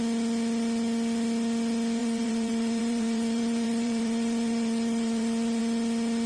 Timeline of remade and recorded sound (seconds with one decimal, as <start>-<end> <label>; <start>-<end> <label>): 0.0-2.0 recorded; 2.0-5.6 remade; 5.6-6.3 recorded